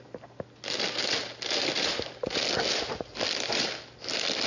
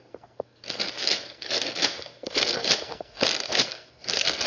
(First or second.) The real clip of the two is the first